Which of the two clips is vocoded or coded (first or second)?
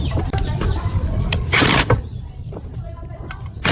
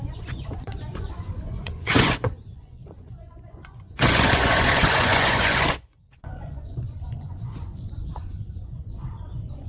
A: second